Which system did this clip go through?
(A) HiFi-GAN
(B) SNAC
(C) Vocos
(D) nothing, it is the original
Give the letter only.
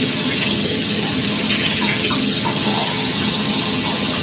A